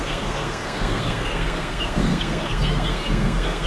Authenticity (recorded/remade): remade